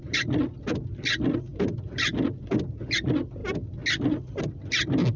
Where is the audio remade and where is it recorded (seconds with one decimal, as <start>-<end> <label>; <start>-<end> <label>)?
0.0-1.5 recorded; 1.5-2.4 remade; 2.4-5.2 recorded